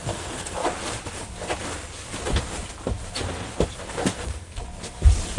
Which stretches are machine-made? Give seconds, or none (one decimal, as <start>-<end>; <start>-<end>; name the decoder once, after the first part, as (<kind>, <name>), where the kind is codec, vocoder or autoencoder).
0.0-0.6 (codec, SNAC); 3.8-4.6